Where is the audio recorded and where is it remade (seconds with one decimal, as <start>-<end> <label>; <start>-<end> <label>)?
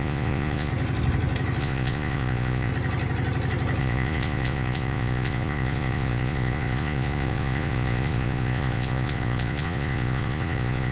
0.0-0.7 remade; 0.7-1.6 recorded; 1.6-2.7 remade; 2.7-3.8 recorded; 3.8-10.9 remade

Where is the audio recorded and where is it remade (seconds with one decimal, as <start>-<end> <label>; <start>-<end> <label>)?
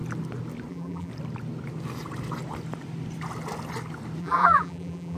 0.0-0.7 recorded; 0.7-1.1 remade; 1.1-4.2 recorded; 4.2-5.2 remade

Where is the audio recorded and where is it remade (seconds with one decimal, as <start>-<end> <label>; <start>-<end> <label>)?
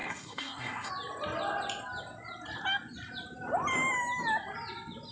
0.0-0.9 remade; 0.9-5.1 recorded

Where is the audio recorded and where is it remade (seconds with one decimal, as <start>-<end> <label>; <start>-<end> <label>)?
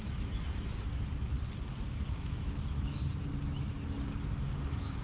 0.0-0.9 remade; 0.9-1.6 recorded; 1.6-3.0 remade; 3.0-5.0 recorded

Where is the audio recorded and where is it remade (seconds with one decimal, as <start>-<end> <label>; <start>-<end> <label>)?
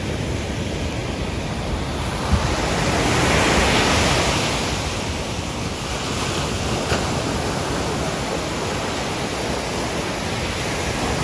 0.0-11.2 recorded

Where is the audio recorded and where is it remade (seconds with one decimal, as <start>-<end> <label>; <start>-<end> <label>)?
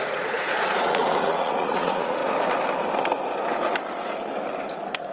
0.0-2.2 remade; 2.2-5.1 recorded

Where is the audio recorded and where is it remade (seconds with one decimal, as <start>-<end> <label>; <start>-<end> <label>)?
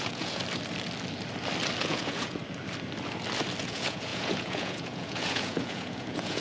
0.0-0.4 remade; 0.4-1.8 recorded; 1.8-2.4 remade; 2.4-3.6 recorded; 3.6-6.4 remade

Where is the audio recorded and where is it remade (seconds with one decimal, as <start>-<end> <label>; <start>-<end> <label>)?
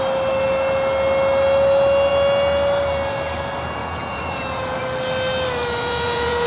0.0-3.8 recorded; 3.8-4.8 remade; 4.8-5.6 recorded; 5.6-6.5 remade